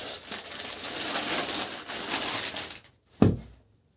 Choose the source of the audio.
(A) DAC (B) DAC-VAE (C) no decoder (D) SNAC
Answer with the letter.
C